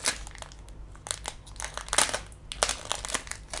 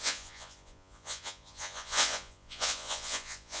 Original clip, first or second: first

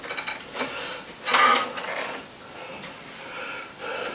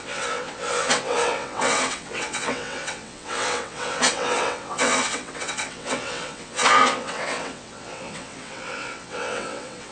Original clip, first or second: first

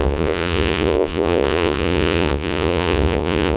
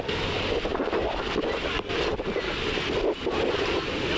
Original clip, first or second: second